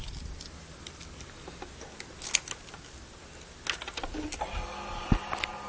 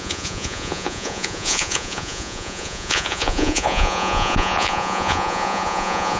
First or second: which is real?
first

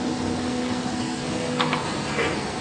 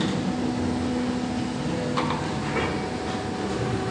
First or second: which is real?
second